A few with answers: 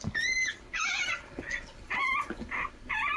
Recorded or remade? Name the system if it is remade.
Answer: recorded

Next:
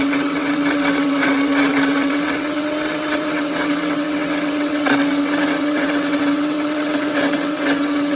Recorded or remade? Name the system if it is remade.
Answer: remade, vocoder, WaveNeXt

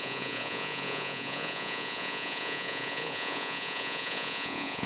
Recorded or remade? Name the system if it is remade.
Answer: remade, vocoder, Vocos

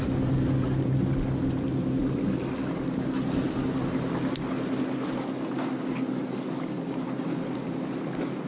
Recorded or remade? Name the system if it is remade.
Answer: recorded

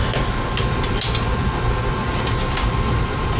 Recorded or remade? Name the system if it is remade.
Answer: recorded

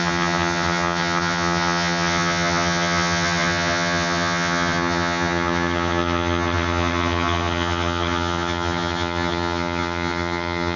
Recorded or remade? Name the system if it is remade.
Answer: remade, vocoder, HiFi-GAN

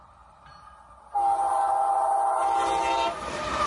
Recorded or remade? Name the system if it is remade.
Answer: recorded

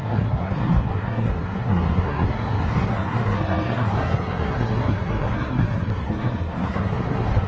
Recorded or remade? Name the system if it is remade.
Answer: remade, codec, SNAC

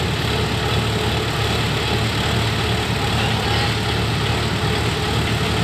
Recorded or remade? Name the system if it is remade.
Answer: recorded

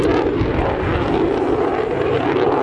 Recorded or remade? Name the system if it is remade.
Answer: recorded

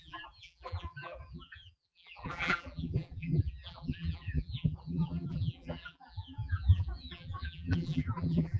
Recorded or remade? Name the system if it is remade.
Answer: remade, vocoder, BigVGAN v2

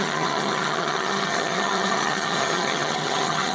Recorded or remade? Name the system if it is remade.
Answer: remade, vocoder, HiFi-GAN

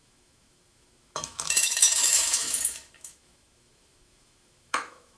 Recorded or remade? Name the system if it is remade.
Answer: remade, autoencoder, DAC-VAE